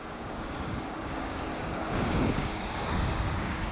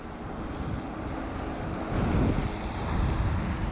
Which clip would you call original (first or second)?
second